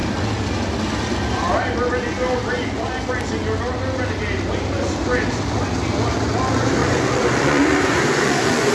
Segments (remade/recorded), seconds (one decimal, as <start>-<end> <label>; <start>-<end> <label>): 0.0-6.8 recorded; 6.8-8.7 remade